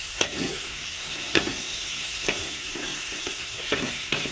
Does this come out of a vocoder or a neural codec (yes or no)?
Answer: yes